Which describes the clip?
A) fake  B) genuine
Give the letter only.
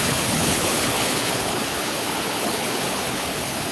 A